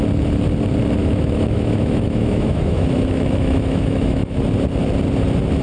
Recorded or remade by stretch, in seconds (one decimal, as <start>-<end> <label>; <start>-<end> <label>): 0.0-1.0 recorded; 1.0-4.4 remade; 4.4-5.6 recorded